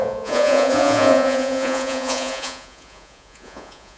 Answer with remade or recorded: remade